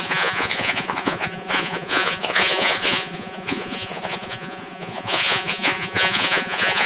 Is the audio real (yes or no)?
no